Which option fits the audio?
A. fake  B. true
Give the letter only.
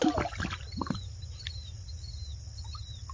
B